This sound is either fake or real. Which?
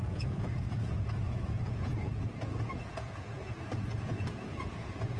fake